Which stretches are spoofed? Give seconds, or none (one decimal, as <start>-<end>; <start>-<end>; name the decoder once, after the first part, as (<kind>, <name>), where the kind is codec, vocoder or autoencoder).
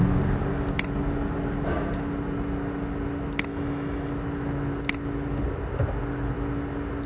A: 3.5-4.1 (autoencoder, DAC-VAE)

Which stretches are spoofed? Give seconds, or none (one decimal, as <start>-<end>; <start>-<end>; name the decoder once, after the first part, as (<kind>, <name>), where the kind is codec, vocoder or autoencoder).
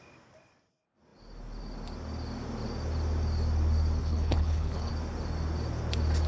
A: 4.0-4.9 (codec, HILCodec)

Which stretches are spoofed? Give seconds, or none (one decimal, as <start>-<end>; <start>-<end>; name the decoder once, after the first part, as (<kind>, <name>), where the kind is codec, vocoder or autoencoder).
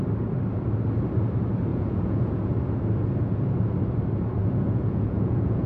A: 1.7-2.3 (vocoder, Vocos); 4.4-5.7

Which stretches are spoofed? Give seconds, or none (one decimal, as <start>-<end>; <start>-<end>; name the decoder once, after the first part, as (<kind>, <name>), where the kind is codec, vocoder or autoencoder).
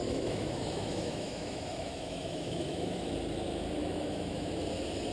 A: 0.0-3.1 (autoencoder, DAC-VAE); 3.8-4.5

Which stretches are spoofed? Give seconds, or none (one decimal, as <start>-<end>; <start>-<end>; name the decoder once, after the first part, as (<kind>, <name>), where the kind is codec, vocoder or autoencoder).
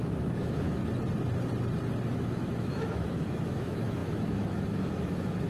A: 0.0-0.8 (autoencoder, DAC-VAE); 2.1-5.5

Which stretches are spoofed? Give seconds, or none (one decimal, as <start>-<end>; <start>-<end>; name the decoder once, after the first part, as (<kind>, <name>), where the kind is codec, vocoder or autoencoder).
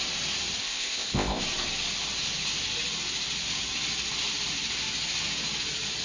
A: 0.6-1.4 (codec, ZipCodec)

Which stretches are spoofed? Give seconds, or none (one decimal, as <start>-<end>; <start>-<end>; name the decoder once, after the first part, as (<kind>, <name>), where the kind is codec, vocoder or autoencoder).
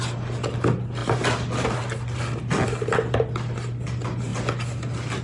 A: none